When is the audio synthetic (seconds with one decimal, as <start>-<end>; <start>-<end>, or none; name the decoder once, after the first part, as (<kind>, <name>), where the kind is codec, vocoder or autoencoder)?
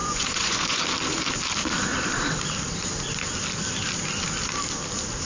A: 0.0-0.8 (vocoder, Vocos)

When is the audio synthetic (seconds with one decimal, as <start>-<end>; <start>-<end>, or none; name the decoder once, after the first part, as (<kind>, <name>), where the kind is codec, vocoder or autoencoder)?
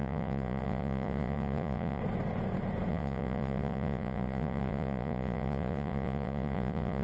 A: 0.0-2.0 (vocoder, Vocos); 2.9-7.0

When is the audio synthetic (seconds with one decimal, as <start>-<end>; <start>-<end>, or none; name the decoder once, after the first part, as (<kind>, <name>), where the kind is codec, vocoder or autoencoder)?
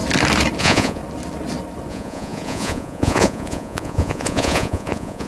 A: 0.6-1.0 (vocoder, Vocos); 1.9-5.3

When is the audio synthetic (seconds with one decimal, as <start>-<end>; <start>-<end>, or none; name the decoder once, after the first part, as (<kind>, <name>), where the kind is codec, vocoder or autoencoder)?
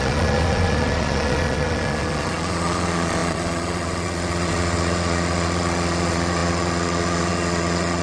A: 0.0-8.0 (vocoder, Vocos)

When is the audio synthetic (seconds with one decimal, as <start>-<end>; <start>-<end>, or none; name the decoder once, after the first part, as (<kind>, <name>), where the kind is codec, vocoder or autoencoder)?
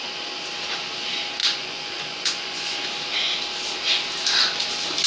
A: 1.4-2.8 (vocoder, Vocos)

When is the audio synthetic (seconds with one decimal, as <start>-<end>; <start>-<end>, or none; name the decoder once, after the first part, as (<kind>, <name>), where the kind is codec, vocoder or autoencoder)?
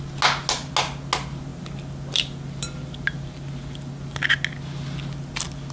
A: none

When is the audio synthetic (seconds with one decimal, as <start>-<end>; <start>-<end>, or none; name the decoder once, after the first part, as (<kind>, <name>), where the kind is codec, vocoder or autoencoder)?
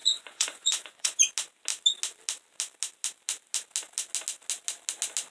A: 0.0-1.2 (vocoder, Vocos)